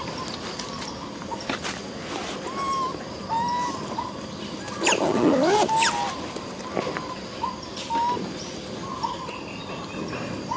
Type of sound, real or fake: real